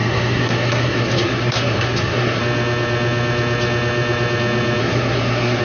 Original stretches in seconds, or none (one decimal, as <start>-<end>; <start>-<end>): 2.4-4.8